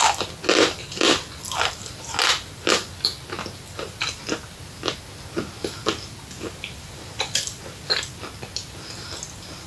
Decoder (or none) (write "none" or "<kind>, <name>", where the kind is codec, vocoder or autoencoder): none